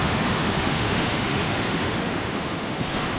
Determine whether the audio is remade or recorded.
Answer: remade